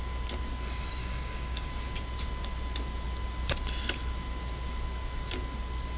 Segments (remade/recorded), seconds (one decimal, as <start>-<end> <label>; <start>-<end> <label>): 0.0-1.0 recorded; 1.0-1.7 remade; 1.7-6.0 recorded